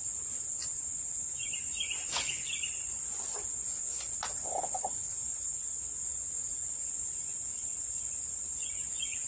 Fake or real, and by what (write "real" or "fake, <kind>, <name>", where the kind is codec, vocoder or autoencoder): real